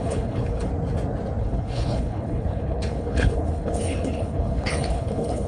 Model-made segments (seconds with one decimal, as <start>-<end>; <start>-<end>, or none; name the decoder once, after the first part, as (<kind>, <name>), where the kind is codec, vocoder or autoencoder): 0.0-0.7 (codec, HILCodec); 1.4-5.5